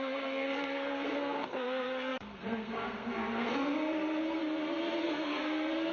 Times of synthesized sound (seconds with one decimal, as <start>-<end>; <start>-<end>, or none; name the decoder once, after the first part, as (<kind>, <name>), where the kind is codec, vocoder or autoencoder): 0.0-4.4 (codec, SNAC); 5.0-5.9